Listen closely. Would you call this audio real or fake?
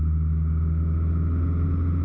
real